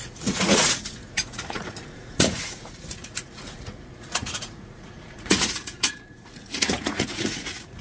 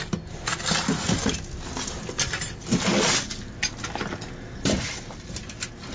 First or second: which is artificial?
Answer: first